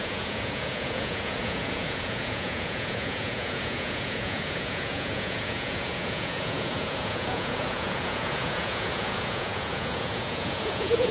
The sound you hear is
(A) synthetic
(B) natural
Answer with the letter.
A